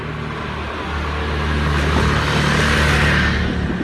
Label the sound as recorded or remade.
recorded